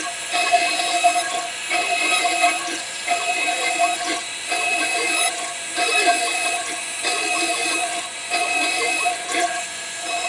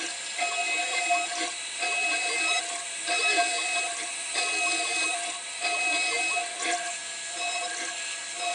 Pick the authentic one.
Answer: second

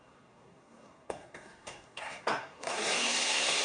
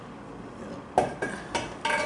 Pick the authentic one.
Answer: second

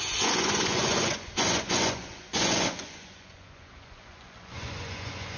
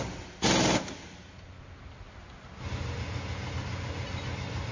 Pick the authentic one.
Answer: second